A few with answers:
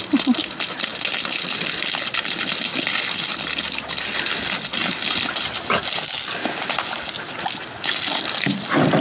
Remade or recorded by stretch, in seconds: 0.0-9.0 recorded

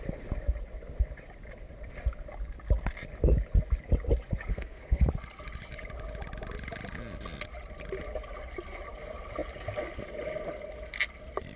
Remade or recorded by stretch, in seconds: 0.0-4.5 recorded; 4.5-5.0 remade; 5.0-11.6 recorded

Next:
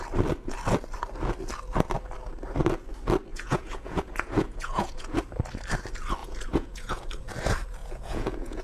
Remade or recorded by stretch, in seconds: 0.0-3.3 recorded; 3.3-5.2 remade; 5.2-6.2 recorded; 6.2-7.0 remade; 7.0-7.8 recorded; 7.8-8.6 remade

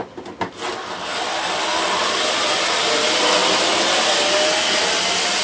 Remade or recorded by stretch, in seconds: 0.0-5.4 recorded